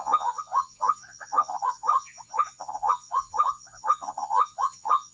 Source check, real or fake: fake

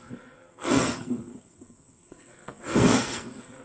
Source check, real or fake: fake